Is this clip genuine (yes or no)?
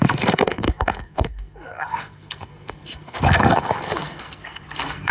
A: no